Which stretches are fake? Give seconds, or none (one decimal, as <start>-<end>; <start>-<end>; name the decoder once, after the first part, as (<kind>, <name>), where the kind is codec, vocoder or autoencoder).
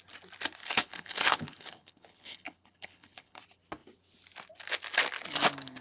0.6-3.4 (codec, HILCodec)